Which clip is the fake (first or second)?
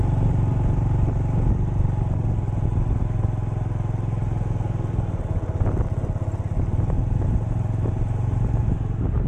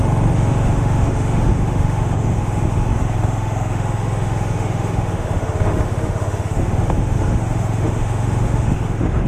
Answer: second